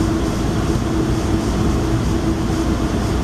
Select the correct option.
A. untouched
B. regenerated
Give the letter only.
A